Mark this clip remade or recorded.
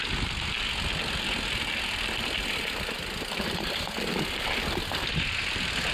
recorded